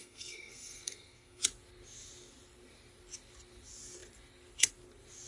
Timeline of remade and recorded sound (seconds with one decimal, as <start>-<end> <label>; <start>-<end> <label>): 0.0-1.4 remade; 1.4-5.3 recorded